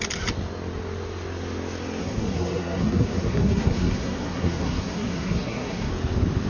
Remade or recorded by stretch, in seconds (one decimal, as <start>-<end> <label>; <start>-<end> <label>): 0.0-2.0 recorded; 2.0-5.9 remade; 5.9-6.5 recorded